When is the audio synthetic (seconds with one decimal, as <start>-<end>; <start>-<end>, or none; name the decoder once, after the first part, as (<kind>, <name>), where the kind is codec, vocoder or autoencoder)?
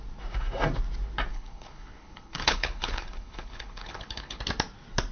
1.3-4.4 (codec, HILCodec)